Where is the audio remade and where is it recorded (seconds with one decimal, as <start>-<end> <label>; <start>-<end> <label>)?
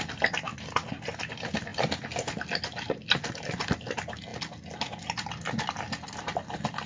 0.0-6.9 recorded